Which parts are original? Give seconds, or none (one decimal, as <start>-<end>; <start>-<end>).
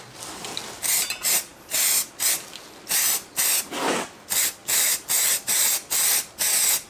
0.0-6.9